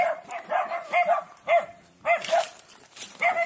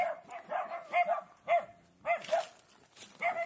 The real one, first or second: second